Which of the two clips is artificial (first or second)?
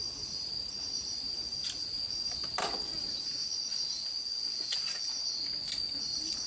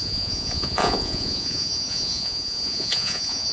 second